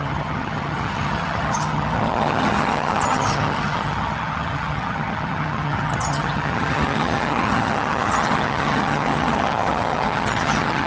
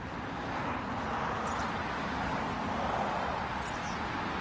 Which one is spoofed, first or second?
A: first